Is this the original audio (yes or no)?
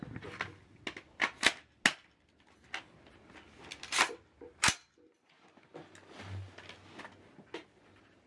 yes